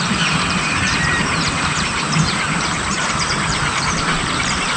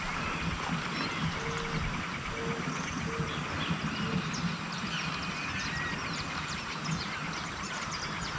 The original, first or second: second